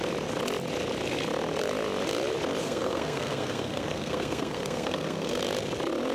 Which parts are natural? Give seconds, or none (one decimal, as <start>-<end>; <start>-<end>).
0.0-2.6; 5.4-6.1